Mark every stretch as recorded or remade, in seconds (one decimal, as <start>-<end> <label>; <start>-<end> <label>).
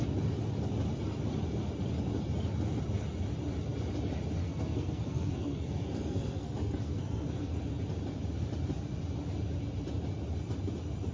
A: 0.0-4.4 recorded; 4.4-7.6 remade; 7.6-11.1 recorded